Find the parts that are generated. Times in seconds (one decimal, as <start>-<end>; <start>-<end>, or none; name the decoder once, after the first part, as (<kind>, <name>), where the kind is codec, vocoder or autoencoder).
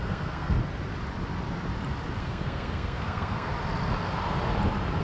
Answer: 0.0-0.6 (codec, SNAC); 2.2-3.5